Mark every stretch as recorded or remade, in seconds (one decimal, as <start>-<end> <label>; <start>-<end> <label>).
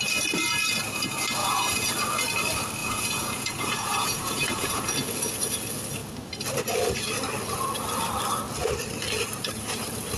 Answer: 0.0-1.4 recorded; 1.4-1.9 remade; 1.9-2.8 recorded; 2.8-4.8 remade; 4.8-10.2 recorded